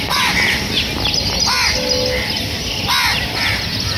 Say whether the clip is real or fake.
real